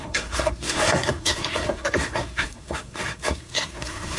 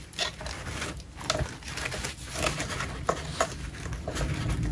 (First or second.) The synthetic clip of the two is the first